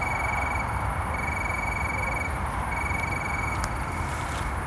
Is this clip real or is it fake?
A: real